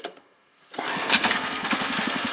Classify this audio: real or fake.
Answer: fake